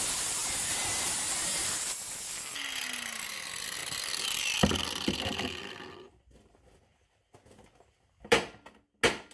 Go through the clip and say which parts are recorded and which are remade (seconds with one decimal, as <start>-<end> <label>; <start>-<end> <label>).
0.0-9.3 recorded